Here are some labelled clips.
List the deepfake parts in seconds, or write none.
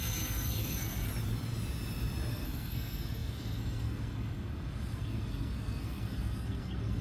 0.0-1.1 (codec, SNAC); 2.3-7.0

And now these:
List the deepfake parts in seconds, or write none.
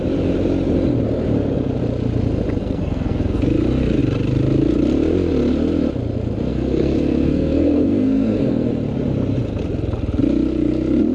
2.6-3.4 (codec, SNAC); 6.5-8.7